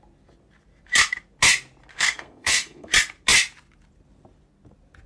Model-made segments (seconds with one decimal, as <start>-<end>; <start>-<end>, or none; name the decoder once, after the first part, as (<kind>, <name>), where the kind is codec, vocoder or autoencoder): 1.9-2.9 (codec, SNAC)